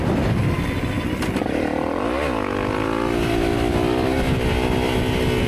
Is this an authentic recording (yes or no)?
yes